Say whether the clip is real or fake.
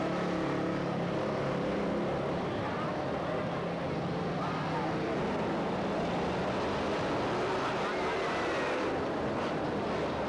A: real